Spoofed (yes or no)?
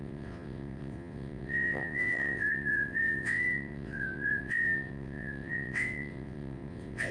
yes